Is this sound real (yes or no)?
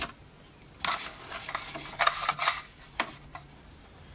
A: yes